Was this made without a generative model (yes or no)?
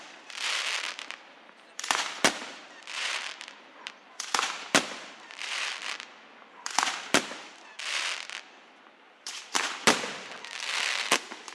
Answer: no